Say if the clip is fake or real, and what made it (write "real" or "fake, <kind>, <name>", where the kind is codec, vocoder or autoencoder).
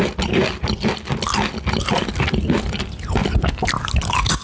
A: real